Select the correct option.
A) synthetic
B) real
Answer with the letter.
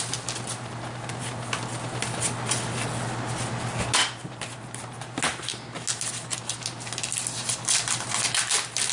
B